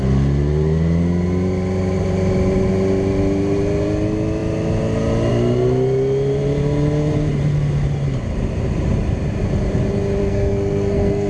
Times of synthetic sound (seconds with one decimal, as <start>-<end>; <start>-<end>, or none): 10.2-11.3